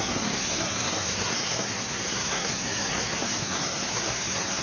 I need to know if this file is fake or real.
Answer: fake